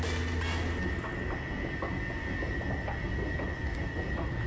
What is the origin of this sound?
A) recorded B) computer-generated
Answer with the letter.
A